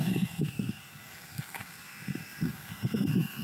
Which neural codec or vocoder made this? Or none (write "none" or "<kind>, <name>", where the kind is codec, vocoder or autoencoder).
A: codec, SNAC